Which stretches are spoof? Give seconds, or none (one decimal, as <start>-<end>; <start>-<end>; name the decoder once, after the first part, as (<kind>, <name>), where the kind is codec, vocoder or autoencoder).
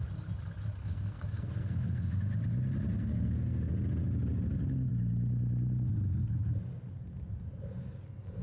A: 0.8-2.2 (codec, SNAC); 2.9-3.7